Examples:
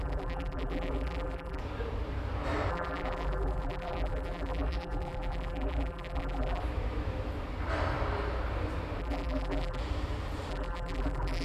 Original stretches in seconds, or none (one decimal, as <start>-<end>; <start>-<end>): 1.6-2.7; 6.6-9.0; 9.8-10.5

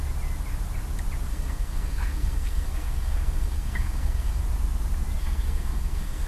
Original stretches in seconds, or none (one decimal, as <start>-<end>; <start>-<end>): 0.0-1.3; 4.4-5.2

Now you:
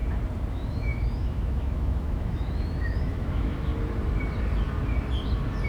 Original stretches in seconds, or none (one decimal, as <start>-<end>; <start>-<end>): 0.0-0.5; 3.7-5.7

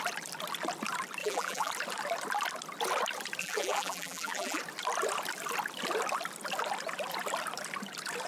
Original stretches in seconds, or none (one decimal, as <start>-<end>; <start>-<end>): 0.0-1.2; 1.7-3.4; 4.6-8.3

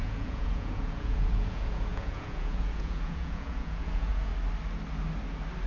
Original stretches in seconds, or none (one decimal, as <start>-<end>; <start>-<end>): 4.3-5.7

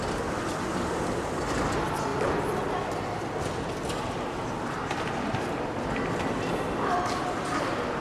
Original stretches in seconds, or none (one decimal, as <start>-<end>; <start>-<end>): 0.0-8.0

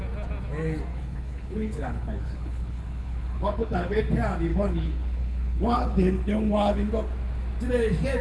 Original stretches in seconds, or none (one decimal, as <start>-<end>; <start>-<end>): 0.0-0.9; 4.0-4.5; 6.9-8.2

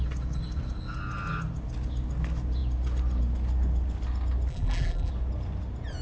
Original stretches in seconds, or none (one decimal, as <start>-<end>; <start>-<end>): 0.0-4.5; 5.1-6.0